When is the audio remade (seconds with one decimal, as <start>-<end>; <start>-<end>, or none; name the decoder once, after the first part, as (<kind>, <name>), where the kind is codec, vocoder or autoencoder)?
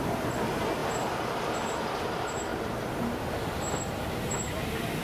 none